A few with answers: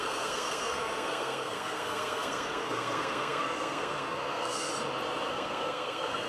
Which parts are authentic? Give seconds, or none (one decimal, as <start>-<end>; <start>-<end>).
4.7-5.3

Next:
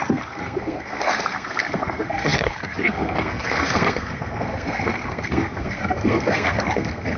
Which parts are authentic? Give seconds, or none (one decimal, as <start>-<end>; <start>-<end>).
none

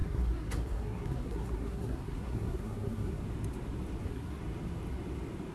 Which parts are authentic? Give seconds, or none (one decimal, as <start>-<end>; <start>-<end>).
3.2-4.0; 4.4-5.5